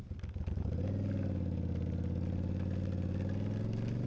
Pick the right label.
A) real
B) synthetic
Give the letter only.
A